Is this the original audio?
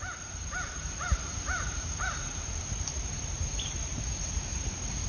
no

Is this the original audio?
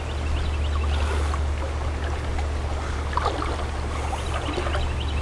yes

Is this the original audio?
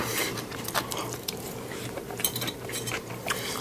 no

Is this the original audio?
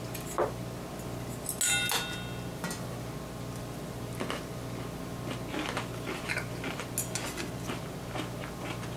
yes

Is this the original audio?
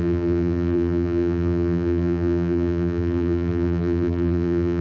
no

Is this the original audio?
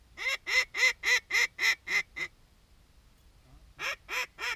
yes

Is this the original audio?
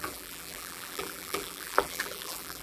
no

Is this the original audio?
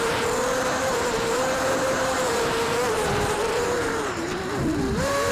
no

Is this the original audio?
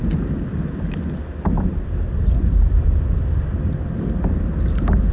no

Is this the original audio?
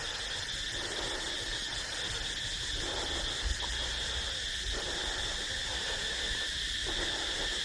yes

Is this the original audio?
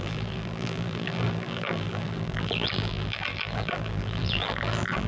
no